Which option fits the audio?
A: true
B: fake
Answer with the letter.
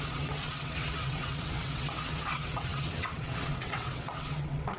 B